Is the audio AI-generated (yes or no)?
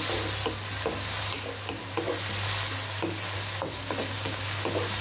no